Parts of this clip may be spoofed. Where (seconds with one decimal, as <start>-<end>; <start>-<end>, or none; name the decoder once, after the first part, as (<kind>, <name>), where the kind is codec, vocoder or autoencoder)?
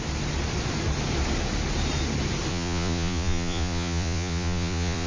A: 2.5-5.1 (vocoder, Vocos)